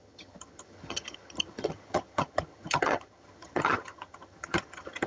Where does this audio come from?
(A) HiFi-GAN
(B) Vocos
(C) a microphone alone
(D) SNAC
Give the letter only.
A